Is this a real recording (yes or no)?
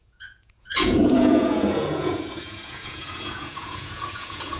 no